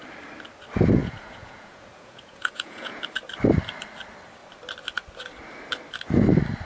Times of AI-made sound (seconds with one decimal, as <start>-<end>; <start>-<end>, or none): 1.0-3.0